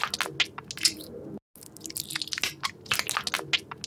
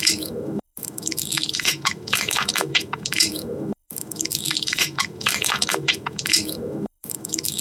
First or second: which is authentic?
first